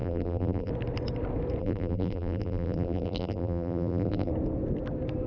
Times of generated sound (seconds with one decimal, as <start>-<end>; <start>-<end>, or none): 0.0-0.7; 1.6-4.3